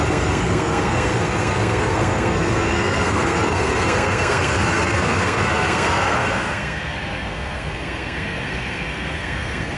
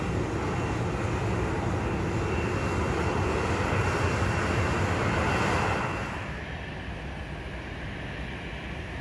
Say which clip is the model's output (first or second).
first